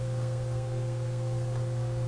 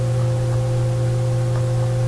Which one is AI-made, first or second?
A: first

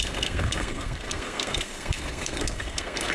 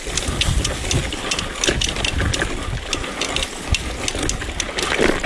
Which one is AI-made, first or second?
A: first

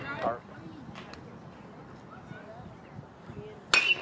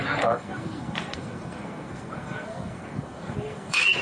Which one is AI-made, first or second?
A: second